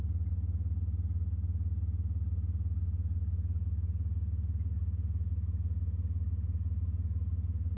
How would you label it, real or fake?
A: real